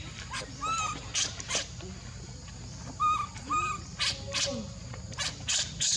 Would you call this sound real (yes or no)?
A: yes